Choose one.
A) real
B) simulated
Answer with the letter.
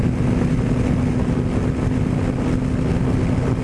A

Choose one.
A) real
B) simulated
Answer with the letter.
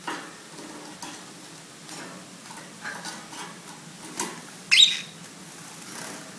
A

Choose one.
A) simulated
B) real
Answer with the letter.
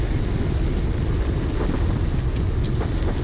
B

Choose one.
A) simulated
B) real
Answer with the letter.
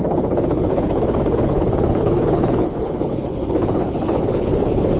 A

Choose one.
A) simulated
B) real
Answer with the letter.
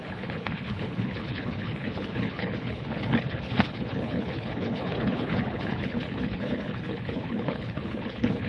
A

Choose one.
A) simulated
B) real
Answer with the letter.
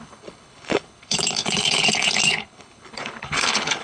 A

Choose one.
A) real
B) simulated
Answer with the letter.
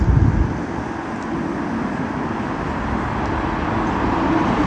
A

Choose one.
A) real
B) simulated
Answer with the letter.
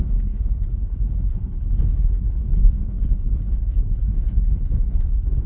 B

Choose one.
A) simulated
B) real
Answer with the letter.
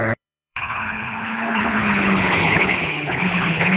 A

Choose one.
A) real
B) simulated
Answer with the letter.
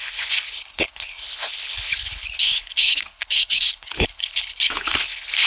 B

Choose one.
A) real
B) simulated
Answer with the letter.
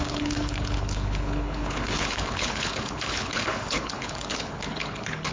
B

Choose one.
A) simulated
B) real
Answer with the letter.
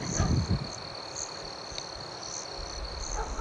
B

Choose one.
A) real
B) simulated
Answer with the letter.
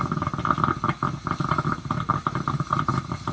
A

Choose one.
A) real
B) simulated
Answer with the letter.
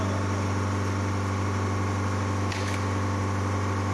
A